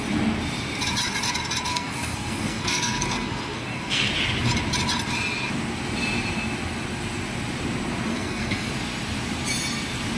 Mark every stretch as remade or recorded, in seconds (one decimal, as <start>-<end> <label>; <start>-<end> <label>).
0.0-1.7 recorded; 1.7-4.1 remade; 4.1-8.1 recorded; 8.1-8.7 remade; 8.7-10.2 recorded